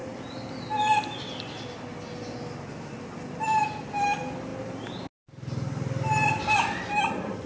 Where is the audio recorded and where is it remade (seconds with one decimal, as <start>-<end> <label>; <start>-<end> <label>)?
0.0-7.5 recorded